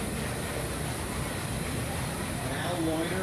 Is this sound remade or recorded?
remade